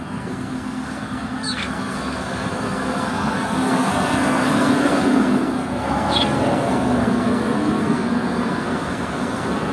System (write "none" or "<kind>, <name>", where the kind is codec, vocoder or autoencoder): codec, SNAC